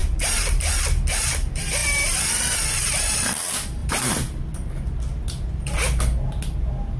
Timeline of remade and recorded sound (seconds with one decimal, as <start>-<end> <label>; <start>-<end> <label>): 0.0-0.6 remade; 0.6-3.8 recorded; 3.8-4.4 remade; 4.4-7.0 recorded